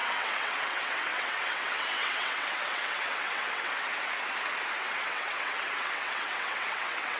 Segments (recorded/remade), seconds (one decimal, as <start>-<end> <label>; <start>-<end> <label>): 0.0-4.1 remade; 4.1-4.8 recorded; 4.8-7.2 remade